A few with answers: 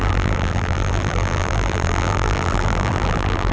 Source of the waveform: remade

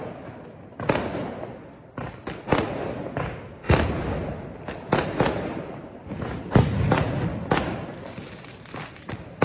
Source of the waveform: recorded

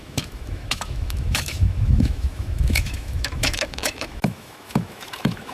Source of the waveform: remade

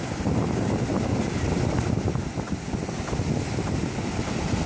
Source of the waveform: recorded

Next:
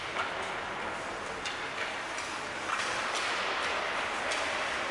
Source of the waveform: recorded